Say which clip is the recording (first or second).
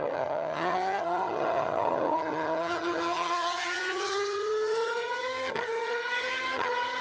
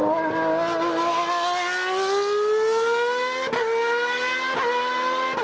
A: second